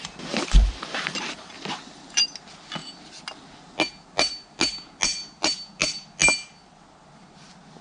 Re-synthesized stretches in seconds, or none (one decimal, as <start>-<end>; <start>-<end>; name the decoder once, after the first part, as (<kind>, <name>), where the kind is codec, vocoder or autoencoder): 0.0-1.8 (vocoder, BigVGAN v2)